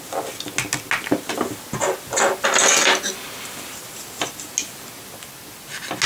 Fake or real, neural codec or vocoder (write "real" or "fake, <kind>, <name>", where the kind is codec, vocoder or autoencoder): real